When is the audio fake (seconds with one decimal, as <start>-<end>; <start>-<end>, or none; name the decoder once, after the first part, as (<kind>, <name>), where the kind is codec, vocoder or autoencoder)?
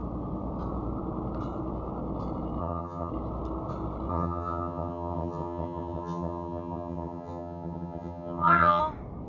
2.6-3.1 (vocoder, HiFi-GAN); 4.1-8.8